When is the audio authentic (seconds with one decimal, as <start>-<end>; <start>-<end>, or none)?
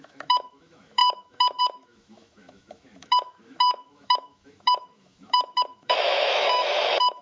none